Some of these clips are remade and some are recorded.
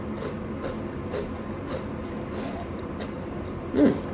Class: recorded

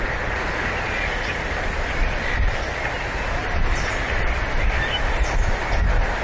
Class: recorded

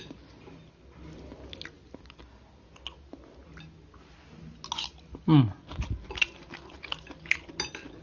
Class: recorded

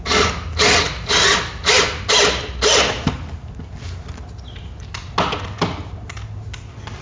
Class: recorded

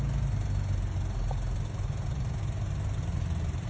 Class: recorded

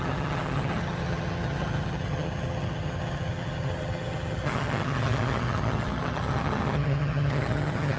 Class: remade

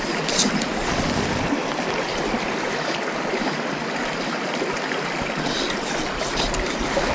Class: recorded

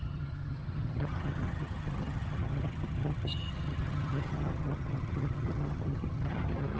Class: remade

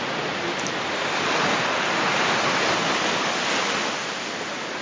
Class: recorded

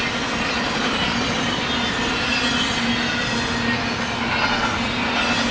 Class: recorded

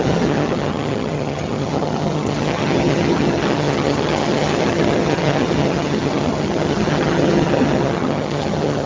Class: remade